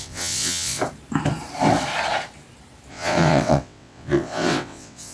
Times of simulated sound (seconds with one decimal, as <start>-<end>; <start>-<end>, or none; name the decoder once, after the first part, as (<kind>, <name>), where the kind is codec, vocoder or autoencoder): 0.0-0.8 (vocoder, WaveNeXt); 2.9-5.1